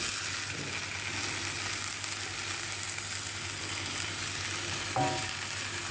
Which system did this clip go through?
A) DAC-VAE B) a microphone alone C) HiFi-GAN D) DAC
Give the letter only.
B